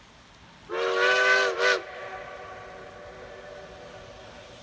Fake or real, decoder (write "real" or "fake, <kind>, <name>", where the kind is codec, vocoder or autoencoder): real